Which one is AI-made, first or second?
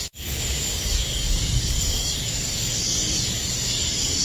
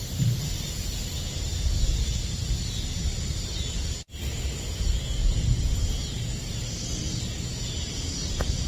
first